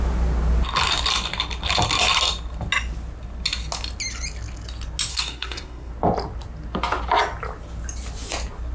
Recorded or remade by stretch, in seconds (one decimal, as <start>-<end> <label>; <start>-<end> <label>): 0.0-5.1 recorded; 5.1-5.9 remade; 5.9-8.7 recorded